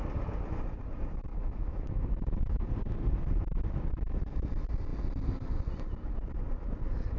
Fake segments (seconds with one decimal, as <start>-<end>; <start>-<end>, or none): 1.3-2.7